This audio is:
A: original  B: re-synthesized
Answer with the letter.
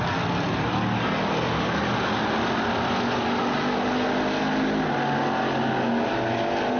A